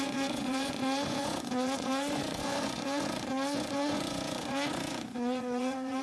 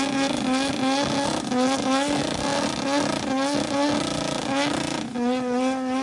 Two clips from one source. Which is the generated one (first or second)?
first